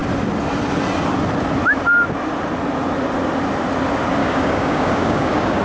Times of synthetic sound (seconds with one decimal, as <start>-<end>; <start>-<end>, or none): 4.2-5.6